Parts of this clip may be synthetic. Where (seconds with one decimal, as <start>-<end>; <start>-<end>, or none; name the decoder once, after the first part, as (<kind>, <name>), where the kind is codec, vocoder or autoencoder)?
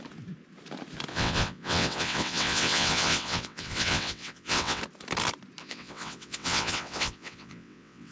1.1-4.8 (vocoder, WaveNeXt); 5.6-8.1